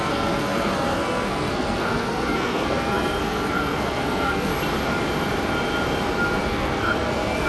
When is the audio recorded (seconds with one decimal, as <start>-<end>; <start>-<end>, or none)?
4.5-6.5